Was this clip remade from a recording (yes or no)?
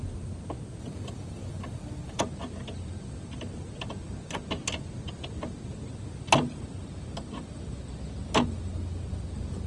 no